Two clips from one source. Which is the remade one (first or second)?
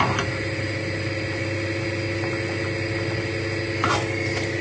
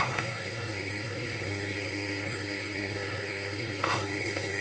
second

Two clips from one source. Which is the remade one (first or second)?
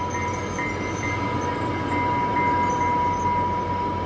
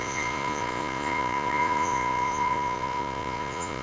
second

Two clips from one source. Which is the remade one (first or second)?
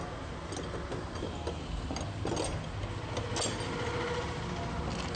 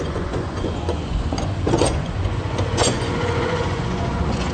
second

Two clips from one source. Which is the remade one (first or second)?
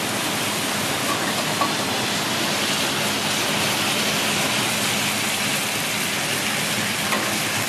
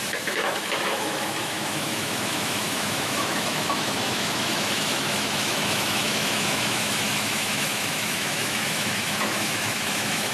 second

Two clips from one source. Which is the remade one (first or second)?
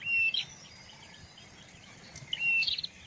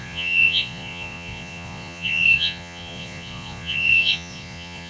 second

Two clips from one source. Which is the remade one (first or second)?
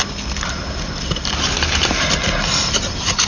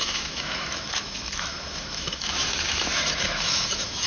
second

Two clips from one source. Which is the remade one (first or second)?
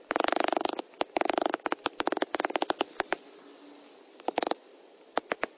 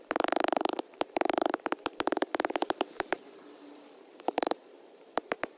second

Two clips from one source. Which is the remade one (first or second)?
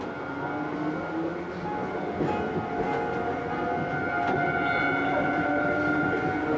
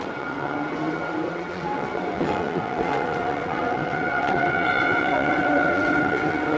second